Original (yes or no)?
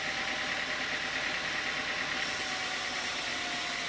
yes